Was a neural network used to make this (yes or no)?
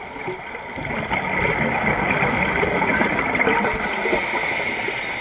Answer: no